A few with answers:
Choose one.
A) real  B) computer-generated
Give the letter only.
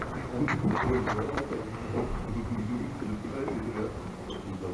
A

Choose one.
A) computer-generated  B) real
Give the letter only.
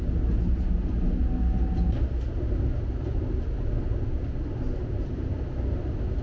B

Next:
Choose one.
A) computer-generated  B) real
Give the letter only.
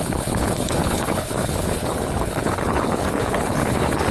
A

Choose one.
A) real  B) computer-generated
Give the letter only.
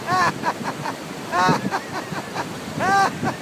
A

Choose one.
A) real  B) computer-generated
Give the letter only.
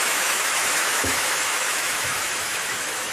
B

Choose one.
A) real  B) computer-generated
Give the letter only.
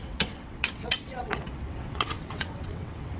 B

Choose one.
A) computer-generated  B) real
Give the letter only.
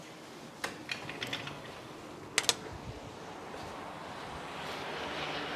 B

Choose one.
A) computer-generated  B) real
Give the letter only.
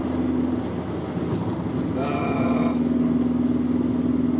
B